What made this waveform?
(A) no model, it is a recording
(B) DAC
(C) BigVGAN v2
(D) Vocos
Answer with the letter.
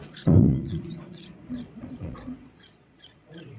D